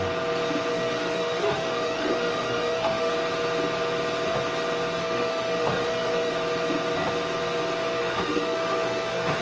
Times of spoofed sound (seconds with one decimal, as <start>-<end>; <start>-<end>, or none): 0.7-3.1; 5.0-6.3; 7.8-9.4